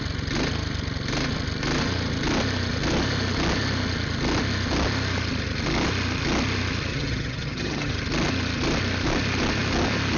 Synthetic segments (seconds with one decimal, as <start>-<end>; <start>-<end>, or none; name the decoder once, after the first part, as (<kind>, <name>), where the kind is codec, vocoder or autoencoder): 6.9-7.9 (vocoder, HiFi-GAN)